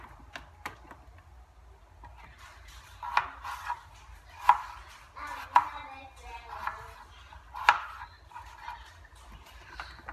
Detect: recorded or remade recorded